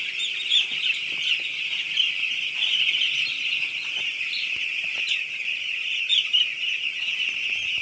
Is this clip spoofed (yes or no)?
yes